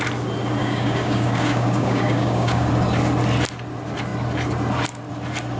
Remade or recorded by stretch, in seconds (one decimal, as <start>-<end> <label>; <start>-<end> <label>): 0.0-0.6 recorded; 0.6-2.7 remade; 2.7-5.6 recorded